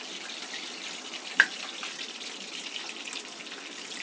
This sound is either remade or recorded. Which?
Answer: recorded